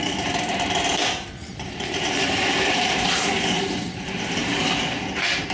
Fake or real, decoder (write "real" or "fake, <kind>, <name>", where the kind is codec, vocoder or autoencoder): fake, vocoder, BigVGAN v2